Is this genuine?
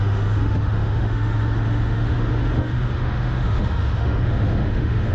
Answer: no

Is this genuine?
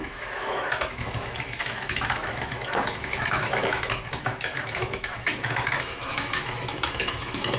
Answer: no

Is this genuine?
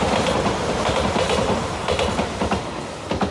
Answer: yes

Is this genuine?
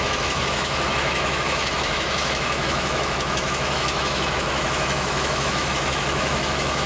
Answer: no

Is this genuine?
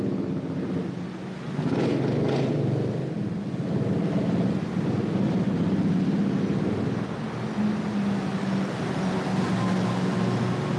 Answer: yes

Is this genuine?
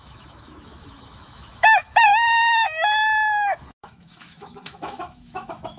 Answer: no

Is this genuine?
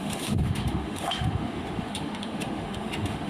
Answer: no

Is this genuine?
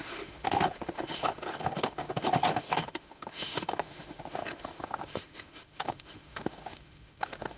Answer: no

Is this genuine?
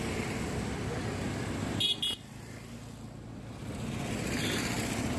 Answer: yes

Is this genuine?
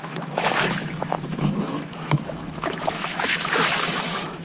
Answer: no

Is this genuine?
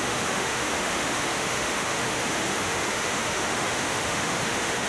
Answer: no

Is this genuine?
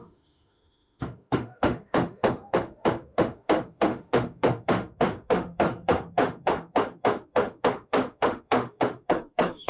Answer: no